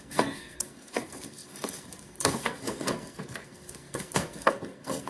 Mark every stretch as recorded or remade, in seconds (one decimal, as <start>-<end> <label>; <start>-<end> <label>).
0.0-5.1 remade